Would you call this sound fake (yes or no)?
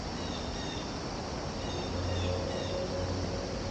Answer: no